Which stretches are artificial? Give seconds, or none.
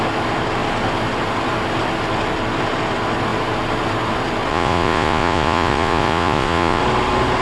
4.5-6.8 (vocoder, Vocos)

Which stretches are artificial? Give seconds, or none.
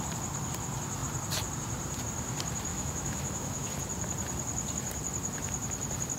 2.7-3.7 (autoencoder, DAC-VAE)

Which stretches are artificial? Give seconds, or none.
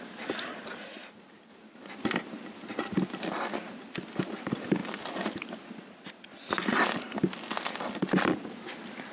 none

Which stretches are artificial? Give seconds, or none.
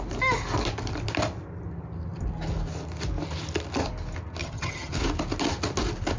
4.4-4.9 (vocoder, HiFi-GAN)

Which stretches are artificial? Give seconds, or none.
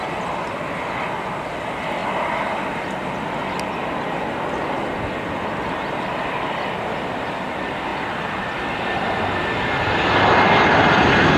none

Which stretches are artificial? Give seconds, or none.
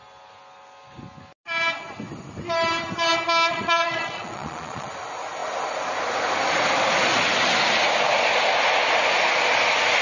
3.5-4.9 (vocoder, Vocos)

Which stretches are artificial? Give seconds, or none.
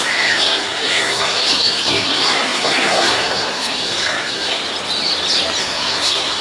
0.0-4.6 (codec, SNAC); 5.6-6.4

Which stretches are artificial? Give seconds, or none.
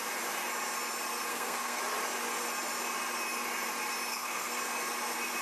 1.3-1.8 (codec, SNAC); 4.1-4.6